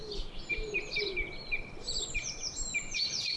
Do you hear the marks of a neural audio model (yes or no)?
yes